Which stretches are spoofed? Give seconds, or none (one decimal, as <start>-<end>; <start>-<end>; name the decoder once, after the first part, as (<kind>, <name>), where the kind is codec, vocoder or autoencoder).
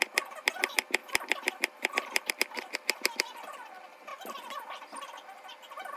none